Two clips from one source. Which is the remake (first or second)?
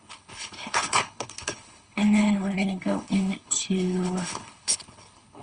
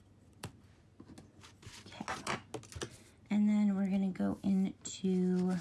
first